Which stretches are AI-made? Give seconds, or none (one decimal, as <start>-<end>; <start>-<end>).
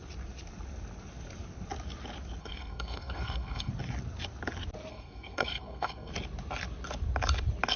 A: 2.4-3.7; 4.9-6.1